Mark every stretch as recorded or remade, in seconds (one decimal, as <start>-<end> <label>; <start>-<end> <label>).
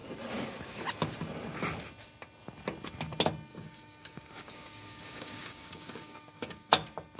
0.0-3.5 recorded; 3.5-6.7 remade; 6.7-7.2 recorded